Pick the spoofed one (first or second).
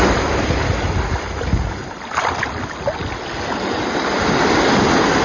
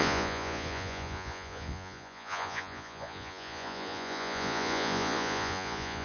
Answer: second